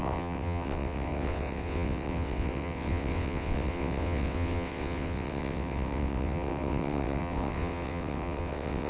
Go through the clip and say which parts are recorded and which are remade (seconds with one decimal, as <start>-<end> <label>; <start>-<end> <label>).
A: 0.0-8.9 remade